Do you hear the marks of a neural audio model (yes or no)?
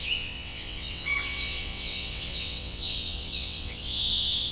yes